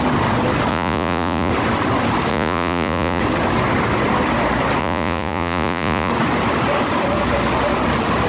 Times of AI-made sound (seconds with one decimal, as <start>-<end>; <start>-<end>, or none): 0.7-1.5; 2.3-3.2; 4.8-6.1